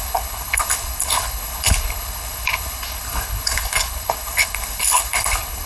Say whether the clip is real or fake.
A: fake